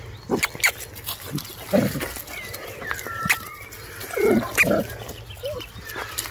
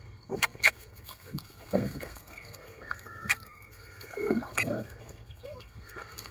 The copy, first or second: second